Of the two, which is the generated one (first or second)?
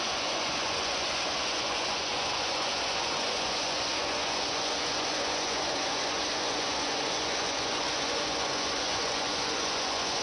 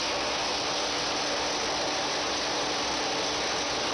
first